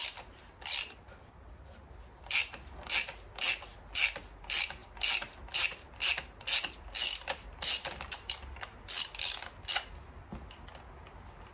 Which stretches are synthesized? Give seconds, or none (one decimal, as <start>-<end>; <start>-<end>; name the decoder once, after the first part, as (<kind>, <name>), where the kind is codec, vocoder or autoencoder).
none